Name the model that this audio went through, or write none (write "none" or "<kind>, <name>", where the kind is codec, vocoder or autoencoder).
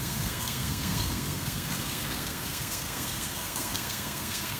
codec, SNAC